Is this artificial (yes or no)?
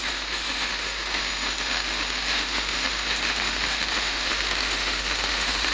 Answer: yes